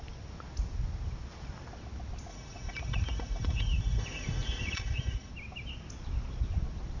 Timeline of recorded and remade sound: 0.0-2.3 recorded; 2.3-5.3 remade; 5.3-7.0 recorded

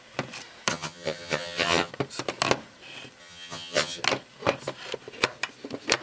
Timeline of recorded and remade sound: 0.0-0.7 recorded; 0.7-1.9 remade; 1.9-3.2 recorded; 3.2-4.0 remade; 4.0-6.0 recorded